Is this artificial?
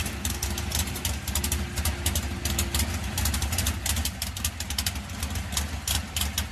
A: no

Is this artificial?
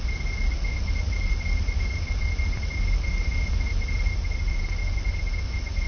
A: no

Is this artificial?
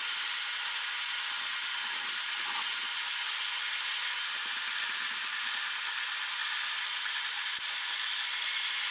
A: no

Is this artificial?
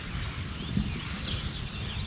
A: no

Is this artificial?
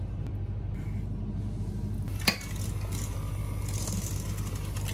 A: no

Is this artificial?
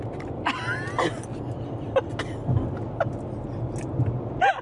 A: no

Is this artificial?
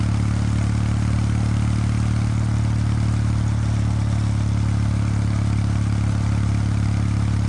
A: no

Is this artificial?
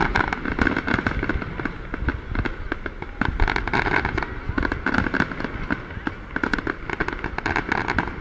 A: no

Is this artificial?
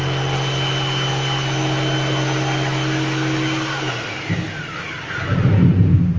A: no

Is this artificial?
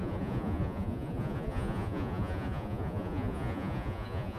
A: yes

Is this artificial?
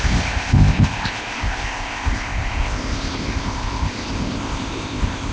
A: yes